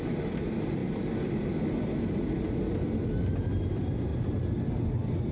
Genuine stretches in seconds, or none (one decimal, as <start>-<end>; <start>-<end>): 0.0-5.3